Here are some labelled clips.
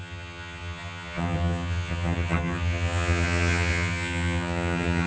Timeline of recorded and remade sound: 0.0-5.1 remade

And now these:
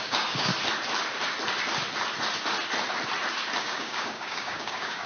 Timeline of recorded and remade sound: 0.0-0.5 remade; 0.5-3.6 recorded; 3.6-5.1 remade